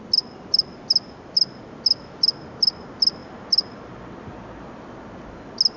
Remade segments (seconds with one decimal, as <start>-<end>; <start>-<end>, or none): none